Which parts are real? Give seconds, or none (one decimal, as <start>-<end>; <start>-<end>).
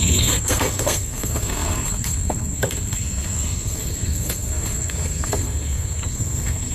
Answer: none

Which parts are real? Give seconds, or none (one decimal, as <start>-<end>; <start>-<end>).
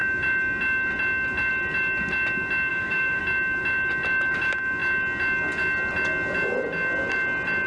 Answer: 0.0-2.7; 3.2-7.7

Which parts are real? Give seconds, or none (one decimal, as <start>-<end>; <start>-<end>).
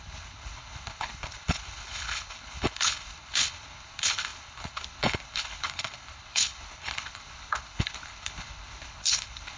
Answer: none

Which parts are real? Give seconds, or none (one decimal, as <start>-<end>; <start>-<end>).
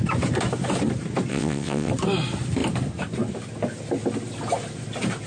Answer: 0.0-1.3; 1.9-5.3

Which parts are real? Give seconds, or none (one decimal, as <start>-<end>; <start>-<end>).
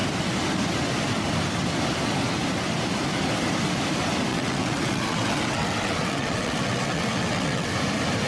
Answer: 0.0-4.3; 7.7-8.3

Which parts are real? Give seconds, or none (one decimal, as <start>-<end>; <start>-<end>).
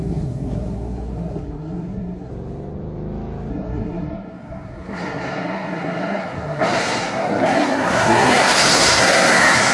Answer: 2.3-3.5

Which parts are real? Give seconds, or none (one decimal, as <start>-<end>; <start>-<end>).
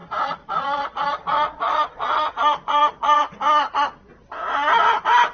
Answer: 3.2-5.3